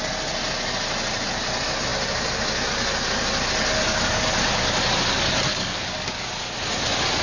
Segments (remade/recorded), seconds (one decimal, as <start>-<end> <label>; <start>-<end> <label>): 0.0-5.5 recorded; 5.5-6.3 remade; 6.3-7.2 recorded